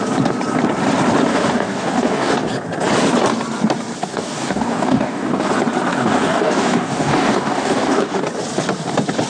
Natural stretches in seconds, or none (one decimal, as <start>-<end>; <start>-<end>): 0.0-1.3; 2.5-4.1; 5.5-5.9; 8.2-9.3